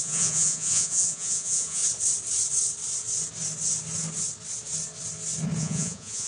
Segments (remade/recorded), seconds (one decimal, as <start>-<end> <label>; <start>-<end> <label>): 0.0-1.8 remade; 1.8-5.6 recorded; 5.6-6.3 remade